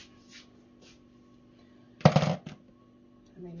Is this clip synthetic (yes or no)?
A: no